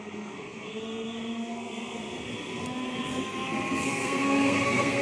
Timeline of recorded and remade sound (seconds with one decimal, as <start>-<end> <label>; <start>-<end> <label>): 0.0-5.0 remade